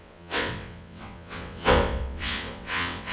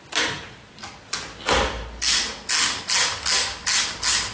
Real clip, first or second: second